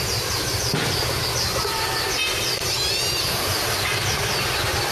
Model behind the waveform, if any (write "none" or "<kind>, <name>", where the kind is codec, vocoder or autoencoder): none